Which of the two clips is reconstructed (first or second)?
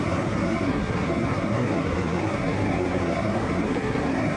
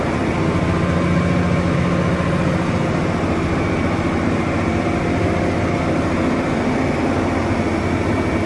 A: first